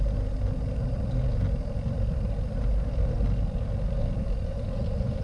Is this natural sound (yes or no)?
yes